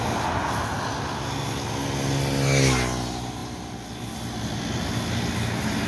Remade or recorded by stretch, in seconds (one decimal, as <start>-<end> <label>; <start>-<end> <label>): 0.0-5.9 recorded